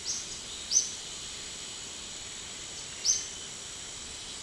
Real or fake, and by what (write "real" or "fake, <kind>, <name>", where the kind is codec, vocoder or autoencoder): real